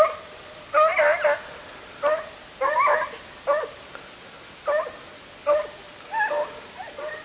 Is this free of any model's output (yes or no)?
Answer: yes